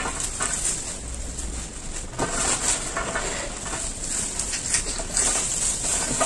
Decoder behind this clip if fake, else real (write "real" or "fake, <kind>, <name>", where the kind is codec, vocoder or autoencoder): real